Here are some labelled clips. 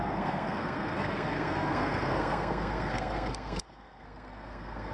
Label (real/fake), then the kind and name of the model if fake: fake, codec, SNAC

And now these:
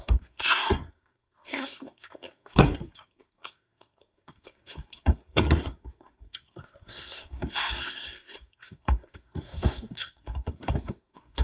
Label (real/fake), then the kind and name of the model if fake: fake, codec, SNAC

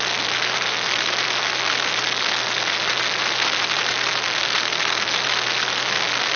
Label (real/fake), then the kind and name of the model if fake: real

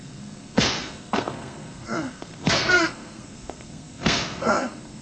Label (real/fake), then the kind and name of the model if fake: fake, codec, SNAC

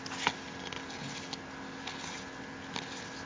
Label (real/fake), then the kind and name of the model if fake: real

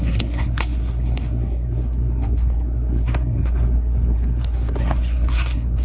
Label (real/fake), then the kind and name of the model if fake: fake, codec, SNAC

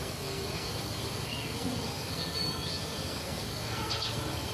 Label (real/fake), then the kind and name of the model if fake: fake, codec, SNAC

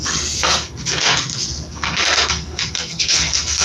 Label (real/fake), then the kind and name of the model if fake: fake, codec, SNAC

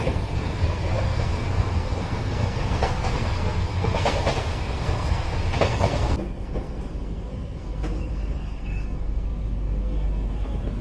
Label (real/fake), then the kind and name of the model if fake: fake, codec, SNAC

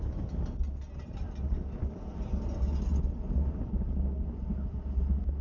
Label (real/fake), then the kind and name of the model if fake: real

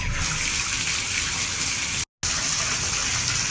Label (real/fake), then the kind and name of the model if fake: real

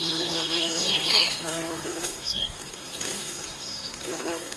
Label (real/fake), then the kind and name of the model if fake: fake, codec, SNAC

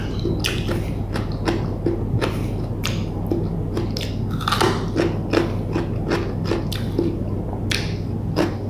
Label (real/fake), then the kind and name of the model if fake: real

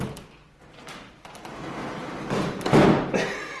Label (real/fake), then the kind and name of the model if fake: real